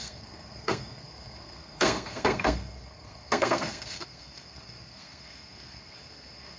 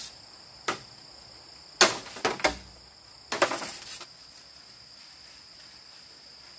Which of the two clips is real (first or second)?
second